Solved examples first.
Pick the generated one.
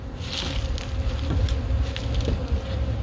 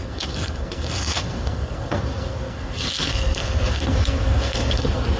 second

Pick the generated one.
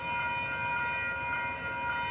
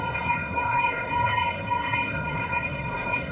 second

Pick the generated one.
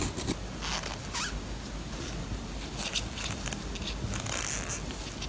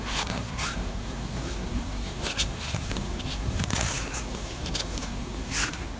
second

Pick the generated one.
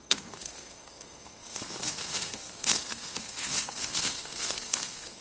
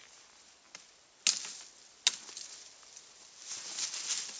first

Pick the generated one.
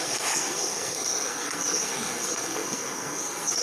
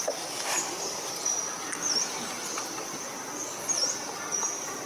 first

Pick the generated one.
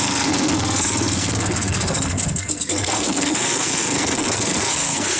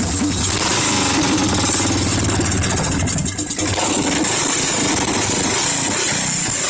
first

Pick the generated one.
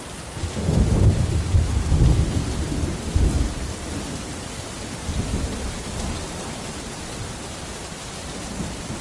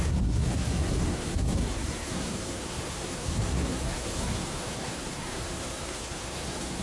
second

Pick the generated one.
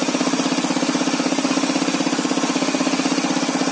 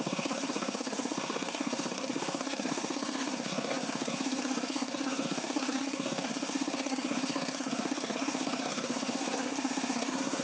second